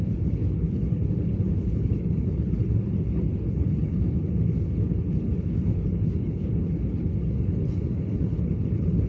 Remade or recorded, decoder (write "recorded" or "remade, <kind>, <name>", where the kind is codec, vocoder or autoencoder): remade, codec, HILCodec